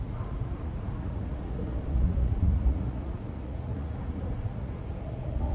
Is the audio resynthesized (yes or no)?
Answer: yes